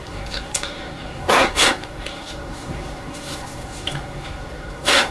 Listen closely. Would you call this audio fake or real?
fake